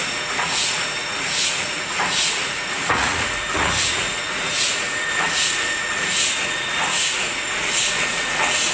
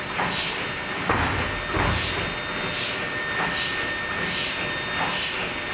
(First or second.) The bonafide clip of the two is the second